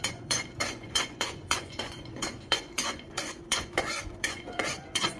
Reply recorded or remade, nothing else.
remade